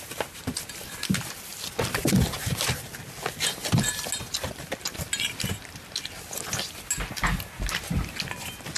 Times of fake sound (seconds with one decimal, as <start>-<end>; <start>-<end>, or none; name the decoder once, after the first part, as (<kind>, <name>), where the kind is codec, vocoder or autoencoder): none